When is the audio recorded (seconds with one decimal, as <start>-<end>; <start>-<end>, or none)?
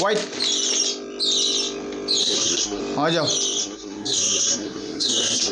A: 0.0-2.2; 2.8-3.6